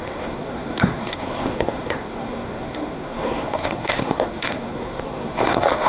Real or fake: fake